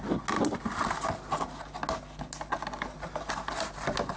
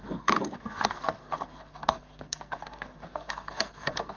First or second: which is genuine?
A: first